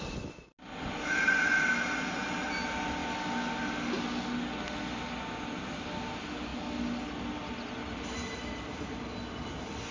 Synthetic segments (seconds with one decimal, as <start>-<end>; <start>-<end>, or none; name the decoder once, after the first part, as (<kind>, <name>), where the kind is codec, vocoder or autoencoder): none